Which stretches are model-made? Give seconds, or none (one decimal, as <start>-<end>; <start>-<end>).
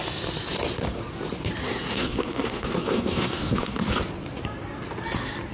1.6-3.8